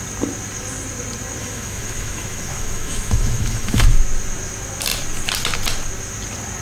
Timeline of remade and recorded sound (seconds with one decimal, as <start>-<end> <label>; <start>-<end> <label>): 0.0-1.4 recorded; 1.4-4.0 remade; 4.0-6.6 recorded